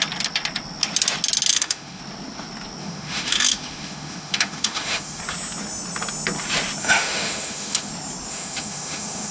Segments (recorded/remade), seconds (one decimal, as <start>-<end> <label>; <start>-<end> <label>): 0.0-1.5 recorded; 1.5-2.0 remade; 2.0-2.8 recorded; 2.8-5.2 remade; 5.2-6.8 recorded; 6.8-7.9 remade; 7.9-8.3 recorded; 8.3-9.3 remade